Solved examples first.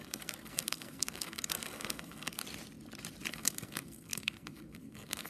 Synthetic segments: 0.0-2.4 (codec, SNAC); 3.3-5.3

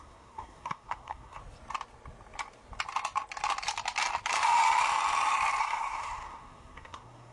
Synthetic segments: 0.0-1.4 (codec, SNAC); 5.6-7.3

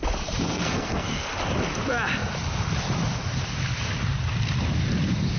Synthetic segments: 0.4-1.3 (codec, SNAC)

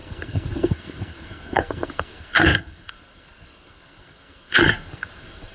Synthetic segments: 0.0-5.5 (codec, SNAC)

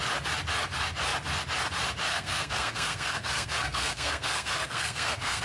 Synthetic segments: 2.1-5.4 (codec, SNAC)

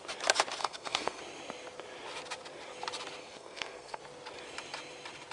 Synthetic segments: 0.6-1.2 (codec, SNAC); 3.2-4.0